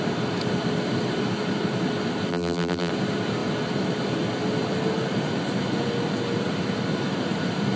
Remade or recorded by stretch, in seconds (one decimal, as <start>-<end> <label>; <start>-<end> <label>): 0.0-2.3 recorded; 2.3-2.9 remade; 2.9-7.8 recorded